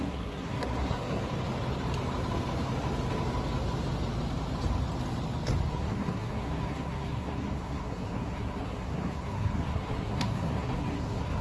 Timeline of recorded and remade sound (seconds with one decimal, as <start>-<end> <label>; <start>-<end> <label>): 0.0-1.2 remade; 1.2-5.7 recorded; 5.7-11.4 remade